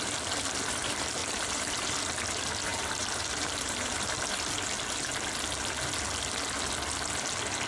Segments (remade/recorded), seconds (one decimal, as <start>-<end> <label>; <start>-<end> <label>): 0.0-1.2 recorded; 1.2-1.9 remade; 1.9-2.7 recorded; 2.7-4.1 remade; 4.1-7.7 recorded